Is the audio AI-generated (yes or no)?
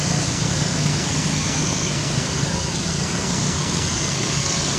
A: yes